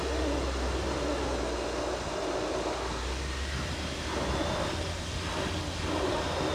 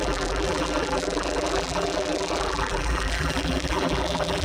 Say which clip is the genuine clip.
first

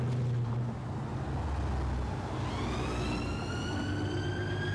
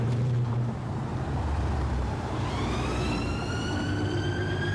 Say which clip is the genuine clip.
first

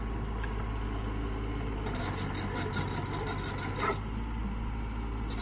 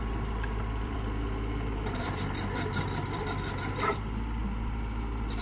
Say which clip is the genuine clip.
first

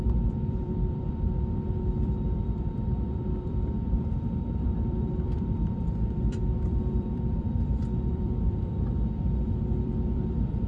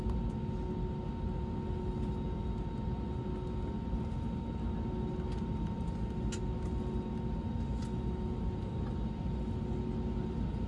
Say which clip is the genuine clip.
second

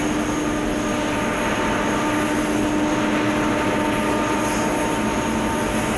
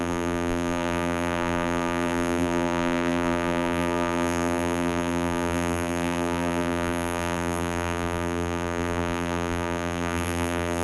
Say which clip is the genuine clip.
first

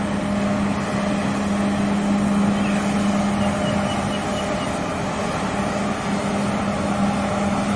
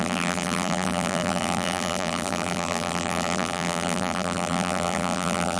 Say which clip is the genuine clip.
first